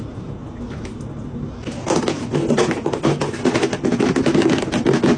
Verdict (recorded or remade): recorded